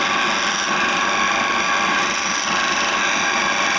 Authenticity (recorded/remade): recorded